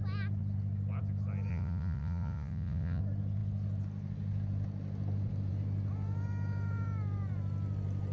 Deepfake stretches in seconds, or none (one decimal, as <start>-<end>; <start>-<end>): 1.5-3.0